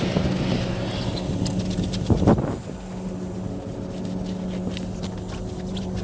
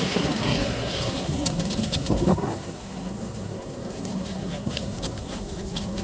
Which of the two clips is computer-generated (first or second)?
second